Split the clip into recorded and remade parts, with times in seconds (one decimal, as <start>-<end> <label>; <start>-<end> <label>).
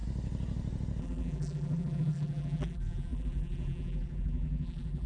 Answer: 0.0-1.0 recorded; 1.0-5.1 remade